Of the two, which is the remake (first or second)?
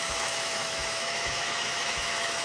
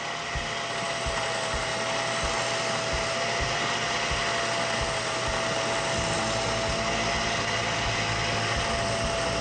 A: first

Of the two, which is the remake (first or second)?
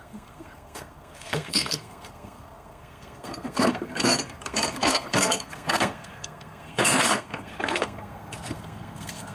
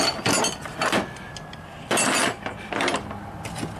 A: first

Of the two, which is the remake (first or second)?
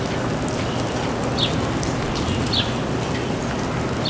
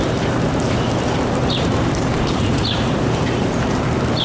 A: second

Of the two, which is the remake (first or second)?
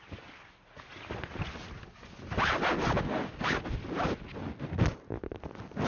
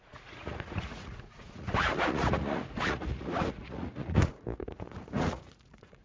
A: second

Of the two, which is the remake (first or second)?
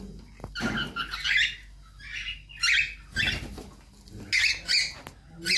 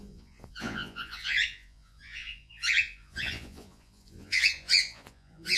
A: second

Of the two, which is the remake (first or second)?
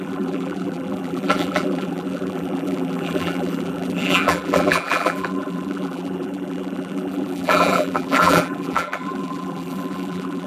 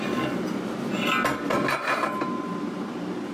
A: first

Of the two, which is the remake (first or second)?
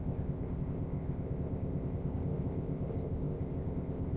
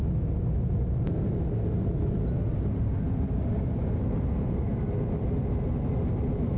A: first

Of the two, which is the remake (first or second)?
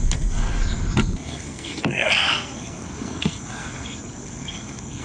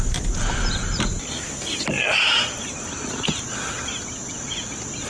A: first